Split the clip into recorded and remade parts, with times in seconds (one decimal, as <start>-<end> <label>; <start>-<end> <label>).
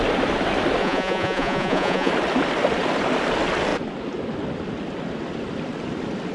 0.0-0.8 recorded; 0.8-2.1 remade; 2.1-6.3 recorded